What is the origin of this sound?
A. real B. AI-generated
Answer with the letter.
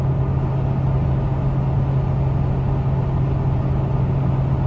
A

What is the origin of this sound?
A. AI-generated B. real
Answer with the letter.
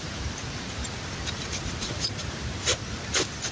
B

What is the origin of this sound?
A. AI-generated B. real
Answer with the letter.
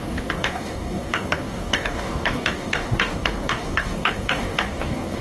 A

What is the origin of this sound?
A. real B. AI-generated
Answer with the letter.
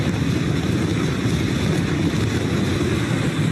A